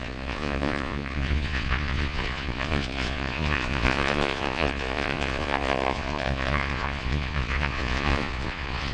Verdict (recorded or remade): remade